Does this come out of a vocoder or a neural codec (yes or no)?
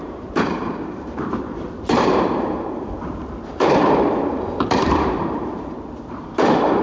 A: yes